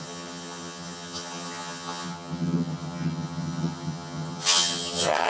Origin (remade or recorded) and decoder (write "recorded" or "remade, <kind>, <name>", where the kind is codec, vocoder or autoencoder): remade, vocoder, HiFi-GAN